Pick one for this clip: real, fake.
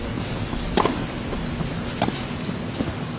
real